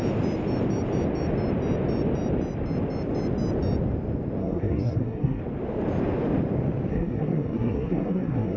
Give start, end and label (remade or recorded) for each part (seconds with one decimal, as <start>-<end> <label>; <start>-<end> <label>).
0.0-4.4 recorded; 4.4-5.4 remade; 5.4-6.9 recorded; 6.9-8.6 remade